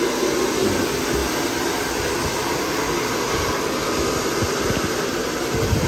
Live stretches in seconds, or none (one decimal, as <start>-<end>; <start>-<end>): 0.0-5.9